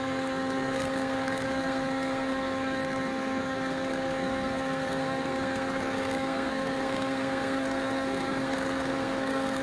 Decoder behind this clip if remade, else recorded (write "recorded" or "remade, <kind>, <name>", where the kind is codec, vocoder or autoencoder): remade, codec, SNAC